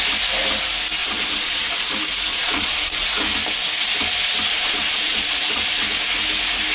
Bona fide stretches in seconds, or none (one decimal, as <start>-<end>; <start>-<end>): 0.0-1.0; 1.7-2.3; 3.1-4.5; 5.4-6.7